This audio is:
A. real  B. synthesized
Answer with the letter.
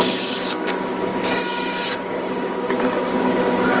B